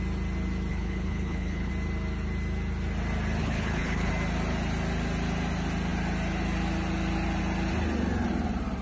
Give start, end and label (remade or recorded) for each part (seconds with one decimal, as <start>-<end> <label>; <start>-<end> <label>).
0.0-0.7 recorded; 0.7-1.7 remade; 1.7-3.4 recorded; 3.4-4.1 remade; 4.1-8.8 recorded